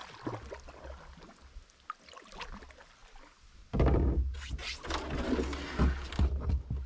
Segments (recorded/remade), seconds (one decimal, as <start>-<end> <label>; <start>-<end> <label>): 0.0-3.0 recorded; 3.0-4.7 remade; 4.7-6.9 recorded